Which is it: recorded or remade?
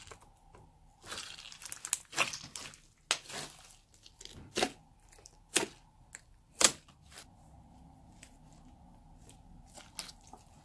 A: recorded